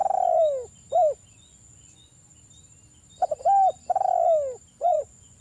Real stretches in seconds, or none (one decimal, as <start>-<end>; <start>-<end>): 0.0-1.3; 2.1-4.7